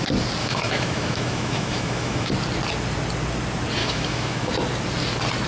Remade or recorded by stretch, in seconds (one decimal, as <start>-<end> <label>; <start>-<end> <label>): 0.0-0.4 recorded; 0.4-2.3 remade; 2.3-3.8 recorded; 3.8-4.5 remade; 4.5-5.5 recorded